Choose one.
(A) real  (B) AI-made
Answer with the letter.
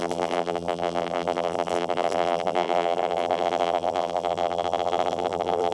B